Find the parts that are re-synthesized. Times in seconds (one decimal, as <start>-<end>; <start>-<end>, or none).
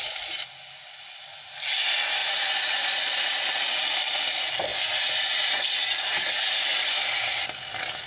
none